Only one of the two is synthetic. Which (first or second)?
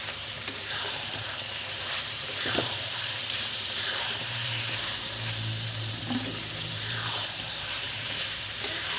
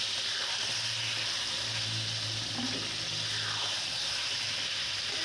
first